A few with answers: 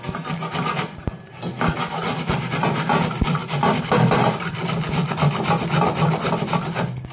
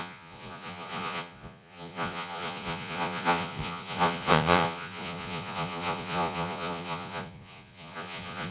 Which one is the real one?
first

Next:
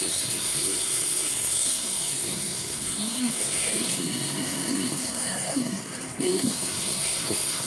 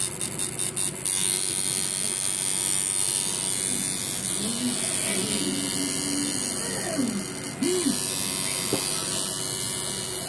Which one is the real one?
second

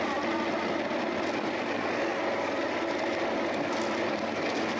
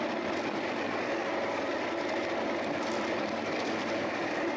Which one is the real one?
first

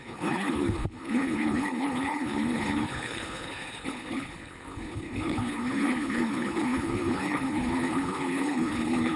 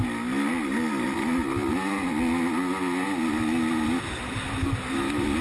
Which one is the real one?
second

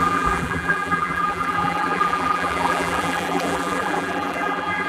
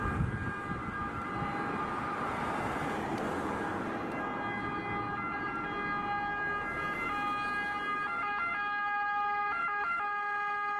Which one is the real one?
second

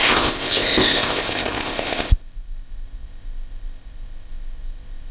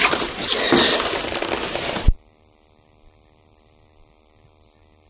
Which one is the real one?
second